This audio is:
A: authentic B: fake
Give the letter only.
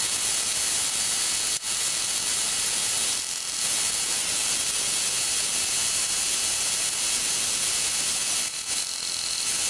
A